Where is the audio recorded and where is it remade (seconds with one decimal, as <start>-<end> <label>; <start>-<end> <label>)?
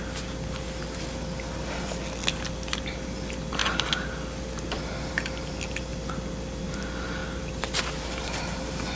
0.0-9.0 recorded